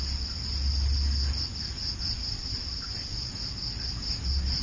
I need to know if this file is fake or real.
real